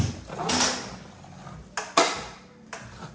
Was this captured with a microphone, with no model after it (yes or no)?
yes